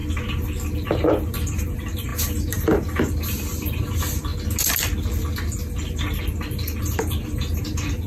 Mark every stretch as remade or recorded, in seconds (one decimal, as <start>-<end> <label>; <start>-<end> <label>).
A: 0.0-1.3 recorded; 1.3-4.3 remade; 4.3-6.8 recorded; 6.8-8.1 remade